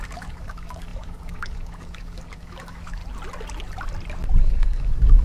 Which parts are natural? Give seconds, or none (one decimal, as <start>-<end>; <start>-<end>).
3.0-4.4